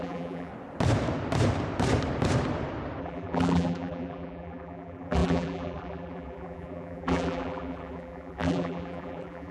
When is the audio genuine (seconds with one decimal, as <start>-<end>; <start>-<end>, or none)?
0.5-3.0